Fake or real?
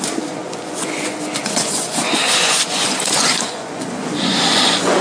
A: fake